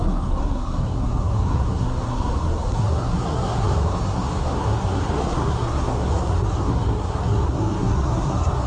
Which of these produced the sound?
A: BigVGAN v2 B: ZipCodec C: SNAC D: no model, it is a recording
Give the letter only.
C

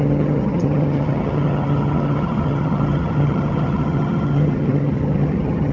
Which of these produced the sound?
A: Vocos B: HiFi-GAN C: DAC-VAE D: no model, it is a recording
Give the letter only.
B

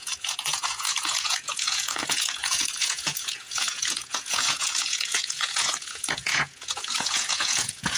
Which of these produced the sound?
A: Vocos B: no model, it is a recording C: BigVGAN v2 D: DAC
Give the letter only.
A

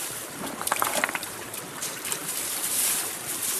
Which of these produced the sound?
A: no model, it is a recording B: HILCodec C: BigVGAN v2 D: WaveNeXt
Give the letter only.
C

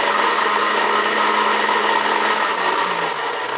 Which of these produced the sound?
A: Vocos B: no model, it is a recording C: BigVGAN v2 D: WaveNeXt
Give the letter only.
B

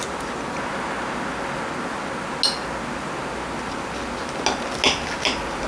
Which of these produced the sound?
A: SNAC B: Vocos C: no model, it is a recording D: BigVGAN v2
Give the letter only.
C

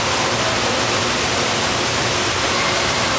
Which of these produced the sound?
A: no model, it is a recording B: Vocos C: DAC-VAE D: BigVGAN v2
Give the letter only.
A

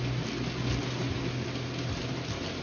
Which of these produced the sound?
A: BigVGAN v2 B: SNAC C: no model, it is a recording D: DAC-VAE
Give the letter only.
C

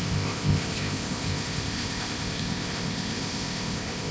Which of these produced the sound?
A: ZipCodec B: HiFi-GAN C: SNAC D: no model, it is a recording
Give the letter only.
A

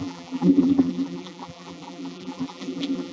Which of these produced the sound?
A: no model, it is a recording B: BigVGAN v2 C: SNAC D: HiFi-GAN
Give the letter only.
B